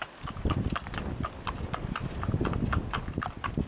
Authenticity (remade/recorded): recorded